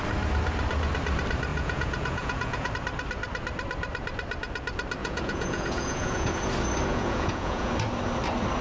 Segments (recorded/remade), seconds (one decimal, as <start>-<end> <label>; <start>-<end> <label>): 0.0-1.5 recorded; 1.5-2.7 remade; 2.7-5.0 recorded; 5.0-6.5 remade; 6.5-6.9 recorded; 6.9-7.7 remade; 7.7-8.6 recorded